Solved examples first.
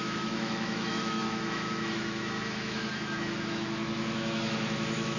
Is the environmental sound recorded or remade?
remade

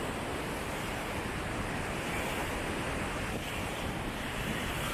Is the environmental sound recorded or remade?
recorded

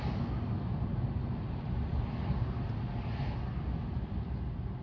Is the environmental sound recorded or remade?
recorded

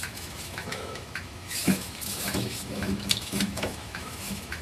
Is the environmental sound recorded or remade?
remade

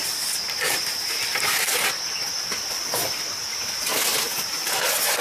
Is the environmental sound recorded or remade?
recorded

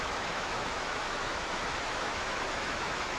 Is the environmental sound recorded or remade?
remade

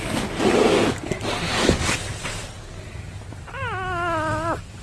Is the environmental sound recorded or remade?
recorded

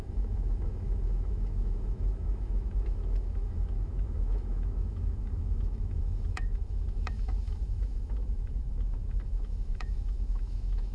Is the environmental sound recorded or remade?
remade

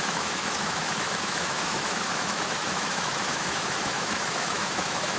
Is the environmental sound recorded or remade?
remade